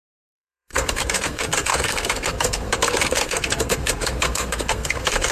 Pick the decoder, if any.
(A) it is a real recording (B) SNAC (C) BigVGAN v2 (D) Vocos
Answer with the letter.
B